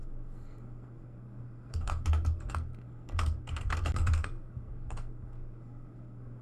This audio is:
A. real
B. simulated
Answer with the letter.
B